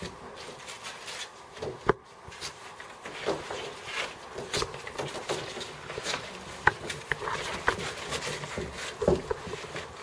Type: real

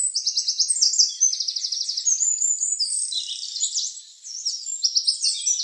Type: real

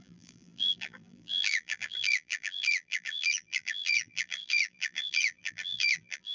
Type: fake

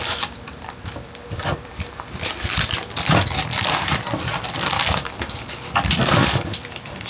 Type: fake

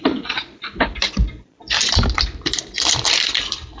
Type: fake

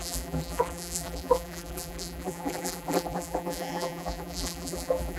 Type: fake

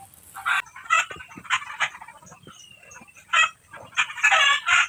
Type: real